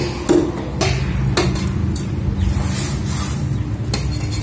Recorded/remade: recorded